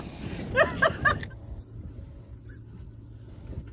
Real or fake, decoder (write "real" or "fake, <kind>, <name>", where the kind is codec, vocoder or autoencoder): real